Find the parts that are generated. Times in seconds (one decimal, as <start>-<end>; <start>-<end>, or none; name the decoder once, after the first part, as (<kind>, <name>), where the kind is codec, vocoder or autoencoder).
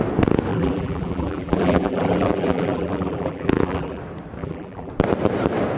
0.5-4.0 (vocoder, BigVGAN v2); 4.4-4.9